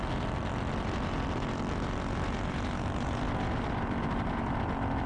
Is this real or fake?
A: real